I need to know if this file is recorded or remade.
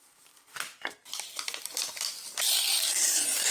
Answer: remade